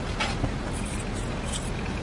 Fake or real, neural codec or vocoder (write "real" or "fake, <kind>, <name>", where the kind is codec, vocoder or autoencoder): real